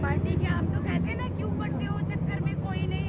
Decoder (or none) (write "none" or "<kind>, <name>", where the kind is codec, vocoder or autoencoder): none